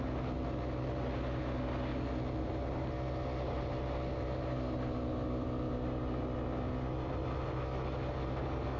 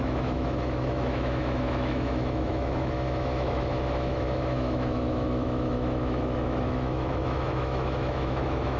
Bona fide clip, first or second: first